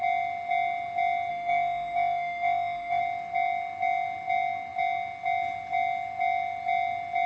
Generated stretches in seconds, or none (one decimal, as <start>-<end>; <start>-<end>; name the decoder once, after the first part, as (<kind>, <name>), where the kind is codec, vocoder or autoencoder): 1.3-3.0 (autoencoder, DAC-VAE)